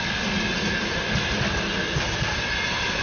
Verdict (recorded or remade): recorded